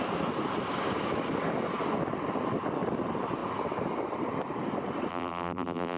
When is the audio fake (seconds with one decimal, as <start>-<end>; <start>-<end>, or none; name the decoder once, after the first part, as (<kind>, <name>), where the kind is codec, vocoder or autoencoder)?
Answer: 5.1-6.0 (vocoder, BigVGAN v2)